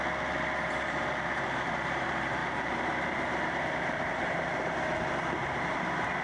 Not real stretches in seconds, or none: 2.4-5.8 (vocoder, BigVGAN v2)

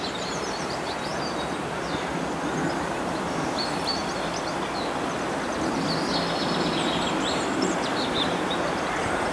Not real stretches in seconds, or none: 0.0-2.1 (vocoder, BigVGAN v2); 2.9-4.0; 7.3-9.3

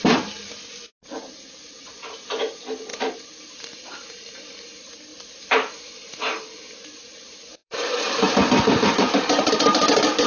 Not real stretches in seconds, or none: 2.9-4.4 (vocoder, BigVGAN v2); 5.1-6.0; 7.5-9.5